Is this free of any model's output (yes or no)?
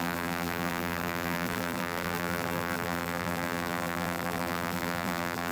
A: no